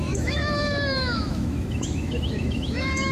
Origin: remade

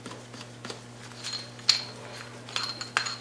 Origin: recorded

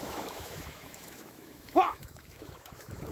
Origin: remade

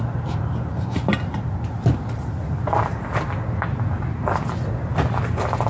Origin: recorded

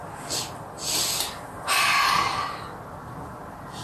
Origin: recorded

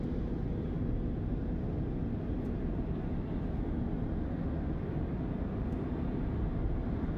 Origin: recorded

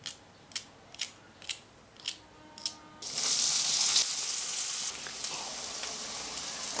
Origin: recorded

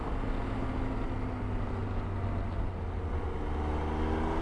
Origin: recorded